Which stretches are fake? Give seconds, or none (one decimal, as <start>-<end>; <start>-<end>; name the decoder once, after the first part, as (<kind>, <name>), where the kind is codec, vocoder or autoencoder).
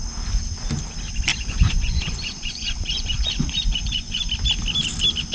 1.3-4.2 (vocoder, Vocos)